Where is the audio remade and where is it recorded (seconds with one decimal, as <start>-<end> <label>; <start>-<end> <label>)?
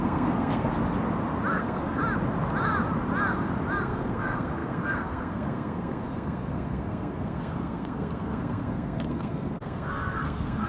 0.0-0.7 remade; 0.7-1.5 recorded; 1.5-2.0 remade; 2.0-3.8 recorded; 3.8-10.7 remade